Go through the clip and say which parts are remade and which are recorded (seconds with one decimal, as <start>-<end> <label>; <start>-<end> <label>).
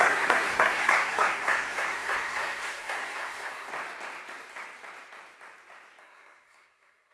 0.0-3.7 remade; 3.7-6.0 recorded; 6.0-7.1 remade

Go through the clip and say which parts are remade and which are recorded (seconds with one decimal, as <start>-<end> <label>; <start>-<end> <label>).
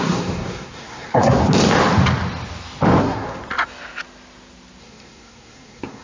0.0-1.4 remade; 1.4-3.0 recorded; 3.0-3.4 remade; 3.4-4.8 recorded; 4.8-6.0 remade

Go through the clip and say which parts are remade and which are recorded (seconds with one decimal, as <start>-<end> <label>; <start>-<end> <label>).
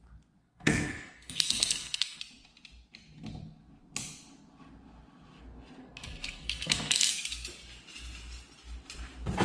0.0-0.4 recorded; 0.4-2.2 remade; 2.2-5.8 recorded; 5.8-7.1 remade; 7.1-9.4 recorded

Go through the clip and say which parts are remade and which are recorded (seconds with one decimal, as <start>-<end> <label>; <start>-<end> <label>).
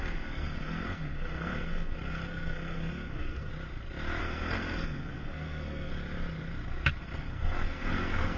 0.0-3.5 remade; 3.5-4.2 recorded; 4.2-5.9 remade; 5.9-7.0 recorded; 7.0-8.4 remade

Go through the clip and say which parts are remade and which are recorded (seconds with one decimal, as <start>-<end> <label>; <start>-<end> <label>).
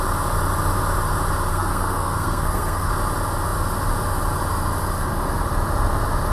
0.0-1.5 recorded; 1.5-2.9 remade; 2.9-6.3 recorded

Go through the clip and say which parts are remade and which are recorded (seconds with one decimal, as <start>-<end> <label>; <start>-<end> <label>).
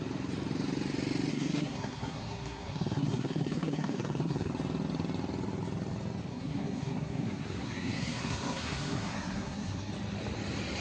0.0-1.3 recorded; 1.3-4.5 remade; 4.5-6.3 recorded; 6.3-9.9 remade; 9.9-10.8 recorded